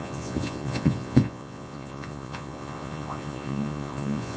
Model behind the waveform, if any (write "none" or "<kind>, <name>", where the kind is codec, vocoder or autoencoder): vocoder, Vocos